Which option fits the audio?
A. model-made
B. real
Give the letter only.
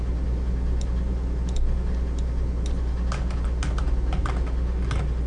B